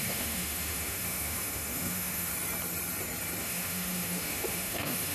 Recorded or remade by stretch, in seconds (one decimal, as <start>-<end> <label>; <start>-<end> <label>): 0.0-2.3 remade; 2.3-3.4 recorded; 3.4-5.1 remade